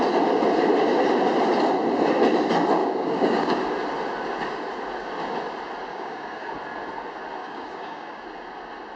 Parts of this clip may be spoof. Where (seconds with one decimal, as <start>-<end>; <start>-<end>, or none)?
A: 2.8-3.6; 5.9-6.5; 7.4-8.2